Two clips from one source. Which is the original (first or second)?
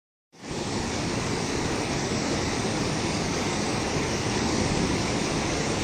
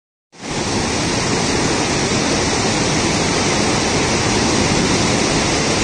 second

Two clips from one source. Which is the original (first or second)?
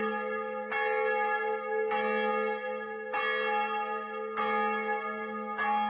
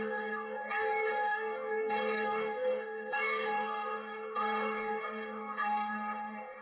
first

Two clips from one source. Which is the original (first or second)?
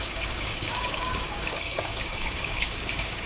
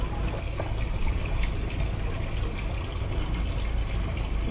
second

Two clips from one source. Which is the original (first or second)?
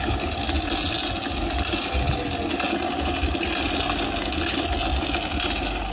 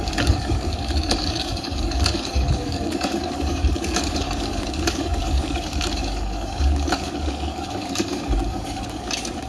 first